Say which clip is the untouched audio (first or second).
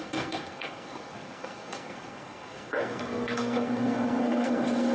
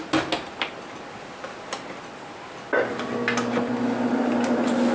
second